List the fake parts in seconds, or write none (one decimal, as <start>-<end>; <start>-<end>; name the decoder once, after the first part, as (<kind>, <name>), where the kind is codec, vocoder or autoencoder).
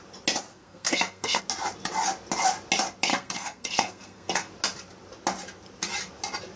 0.5-1.4 (codec, SNAC); 3.1-4.5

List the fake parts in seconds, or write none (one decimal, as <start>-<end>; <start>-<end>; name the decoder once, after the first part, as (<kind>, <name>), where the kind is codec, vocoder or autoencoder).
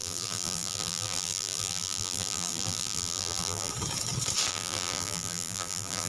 0.0-3.7 (vocoder, BigVGAN v2); 4.5-6.1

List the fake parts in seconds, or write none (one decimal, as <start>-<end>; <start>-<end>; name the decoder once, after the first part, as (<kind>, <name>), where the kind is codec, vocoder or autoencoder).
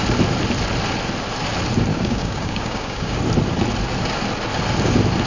1.9-3.2 (codec, DAC)